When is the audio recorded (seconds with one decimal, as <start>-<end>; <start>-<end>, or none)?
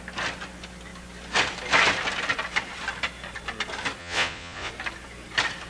0.0-4.0; 4.7-5.7